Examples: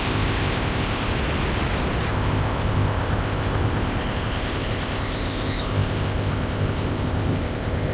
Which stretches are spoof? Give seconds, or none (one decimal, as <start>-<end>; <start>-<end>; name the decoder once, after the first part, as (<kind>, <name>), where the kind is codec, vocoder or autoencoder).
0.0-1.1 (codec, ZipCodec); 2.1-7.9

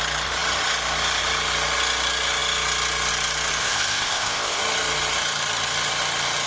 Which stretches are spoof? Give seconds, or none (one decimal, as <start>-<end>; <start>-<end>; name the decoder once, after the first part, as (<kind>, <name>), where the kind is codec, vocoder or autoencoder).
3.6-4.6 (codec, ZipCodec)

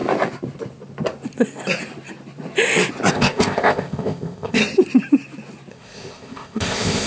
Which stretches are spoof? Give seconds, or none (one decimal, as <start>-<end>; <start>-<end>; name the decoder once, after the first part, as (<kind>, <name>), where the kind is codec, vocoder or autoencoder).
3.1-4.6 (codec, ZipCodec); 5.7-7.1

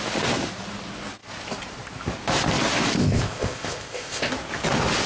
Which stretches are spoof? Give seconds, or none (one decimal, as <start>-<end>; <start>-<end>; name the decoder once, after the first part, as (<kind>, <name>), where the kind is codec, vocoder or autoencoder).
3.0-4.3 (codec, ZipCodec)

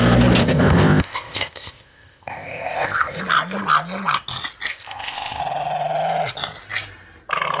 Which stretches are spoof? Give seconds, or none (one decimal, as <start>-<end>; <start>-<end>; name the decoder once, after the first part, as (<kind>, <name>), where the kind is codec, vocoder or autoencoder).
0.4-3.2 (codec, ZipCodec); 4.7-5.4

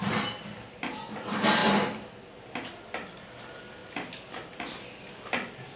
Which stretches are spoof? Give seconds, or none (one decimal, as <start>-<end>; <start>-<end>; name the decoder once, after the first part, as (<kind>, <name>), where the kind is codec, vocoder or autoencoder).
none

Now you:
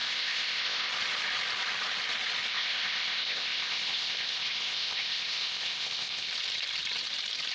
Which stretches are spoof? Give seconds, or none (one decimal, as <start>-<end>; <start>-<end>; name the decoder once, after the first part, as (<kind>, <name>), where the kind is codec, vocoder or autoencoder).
0.0-0.9 (codec, ZipCodec); 2.5-6.3